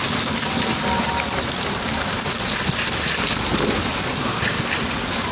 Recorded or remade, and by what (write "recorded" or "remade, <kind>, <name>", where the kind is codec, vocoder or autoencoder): recorded